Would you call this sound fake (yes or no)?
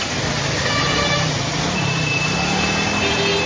no